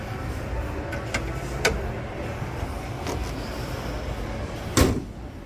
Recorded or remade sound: recorded